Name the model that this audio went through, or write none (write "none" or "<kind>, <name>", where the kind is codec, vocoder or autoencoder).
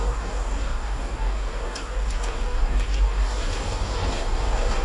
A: codec, DAC